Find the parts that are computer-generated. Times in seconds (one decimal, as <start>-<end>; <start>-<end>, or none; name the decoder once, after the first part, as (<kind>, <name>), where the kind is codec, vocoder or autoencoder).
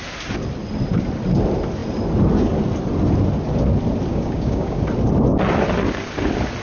4.1-4.8 (codec, DAC)